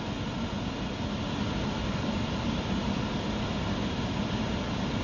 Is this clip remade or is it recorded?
recorded